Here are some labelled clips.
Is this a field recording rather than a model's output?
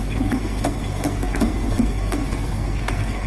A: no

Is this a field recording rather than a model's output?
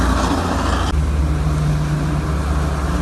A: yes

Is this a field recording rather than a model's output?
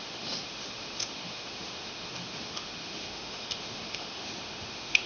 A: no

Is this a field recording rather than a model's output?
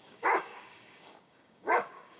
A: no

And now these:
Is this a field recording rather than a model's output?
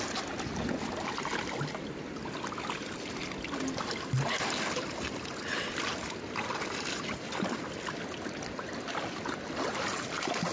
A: yes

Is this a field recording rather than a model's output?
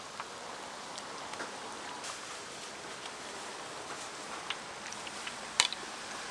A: no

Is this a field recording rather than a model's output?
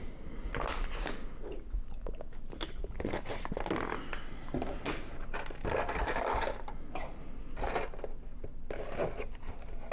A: yes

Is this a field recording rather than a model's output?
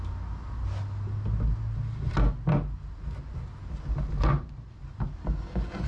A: yes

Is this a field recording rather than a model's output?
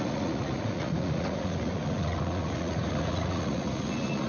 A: no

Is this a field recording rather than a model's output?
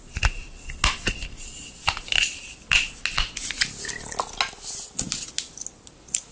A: yes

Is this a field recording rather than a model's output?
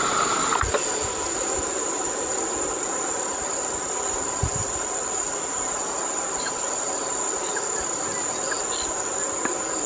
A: yes